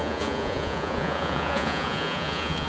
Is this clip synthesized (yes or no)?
yes